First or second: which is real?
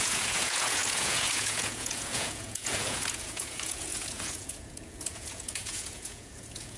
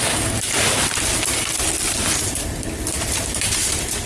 second